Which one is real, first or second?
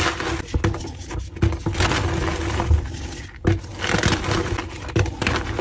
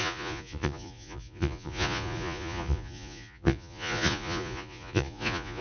first